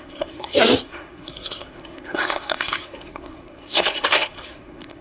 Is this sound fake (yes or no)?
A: yes